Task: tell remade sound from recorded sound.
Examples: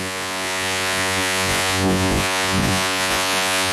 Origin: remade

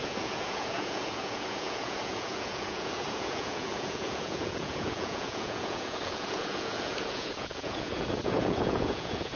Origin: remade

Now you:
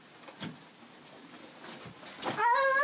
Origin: recorded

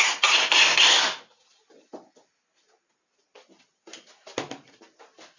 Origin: recorded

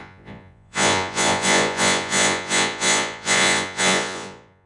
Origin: remade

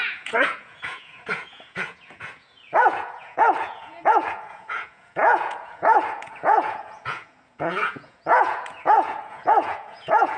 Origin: remade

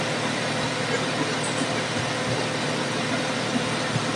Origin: recorded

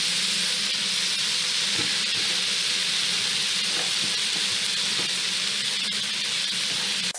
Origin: recorded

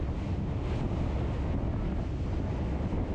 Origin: recorded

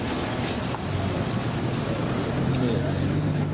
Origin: recorded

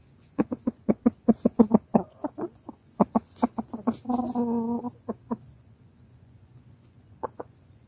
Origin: remade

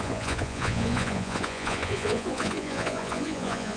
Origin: remade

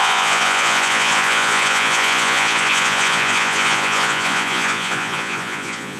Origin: remade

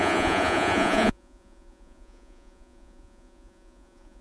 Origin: remade